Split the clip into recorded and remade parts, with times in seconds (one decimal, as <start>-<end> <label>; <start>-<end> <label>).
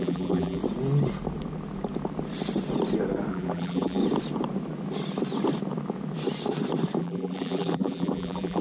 0.0-0.6 remade; 0.6-3.3 recorded; 3.3-4.0 remade; 4.0-7.0 recorded; 7.0-8.6 remade